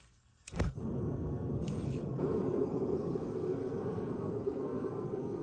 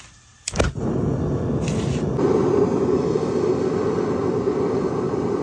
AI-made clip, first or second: first